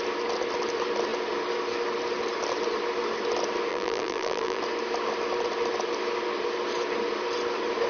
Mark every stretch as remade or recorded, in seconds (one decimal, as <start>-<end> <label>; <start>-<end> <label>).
0.0-3.7 recorded; 3.7-4.6 remade; 4.6-7.9 recorded